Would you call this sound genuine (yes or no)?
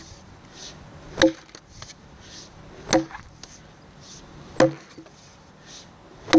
yes